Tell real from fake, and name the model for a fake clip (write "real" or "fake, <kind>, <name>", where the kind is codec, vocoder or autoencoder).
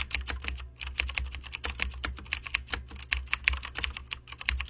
real